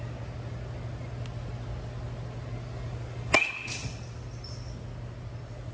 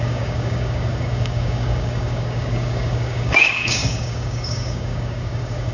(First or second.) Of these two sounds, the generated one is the second